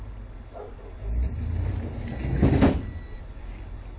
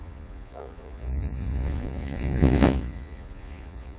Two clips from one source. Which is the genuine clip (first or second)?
first